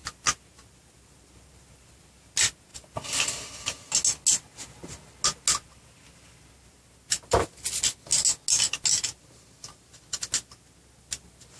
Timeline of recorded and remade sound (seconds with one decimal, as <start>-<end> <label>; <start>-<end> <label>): 0.0-11.6 recorded